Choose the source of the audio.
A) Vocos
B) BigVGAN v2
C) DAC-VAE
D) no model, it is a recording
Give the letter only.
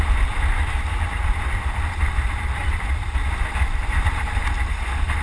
B